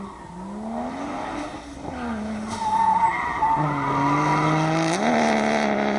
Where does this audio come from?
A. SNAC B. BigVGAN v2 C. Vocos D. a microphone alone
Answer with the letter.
D